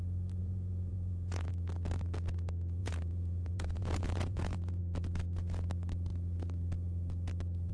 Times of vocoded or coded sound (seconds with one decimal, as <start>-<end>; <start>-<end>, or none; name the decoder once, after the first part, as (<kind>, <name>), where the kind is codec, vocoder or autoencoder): 0.4-1.5 (vocoder, Vocos); 2.8-4.8